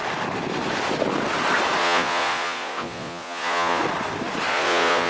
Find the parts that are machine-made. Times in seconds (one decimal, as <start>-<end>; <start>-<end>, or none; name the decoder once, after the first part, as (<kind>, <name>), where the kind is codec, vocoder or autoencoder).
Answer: 1.8-3.8 (vocoder, Vocos); 4.5-5.1